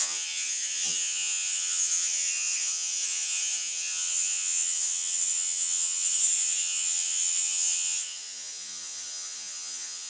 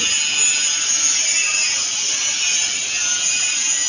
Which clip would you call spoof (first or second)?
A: first